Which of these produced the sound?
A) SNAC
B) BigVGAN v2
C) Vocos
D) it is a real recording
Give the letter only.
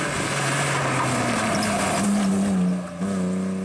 D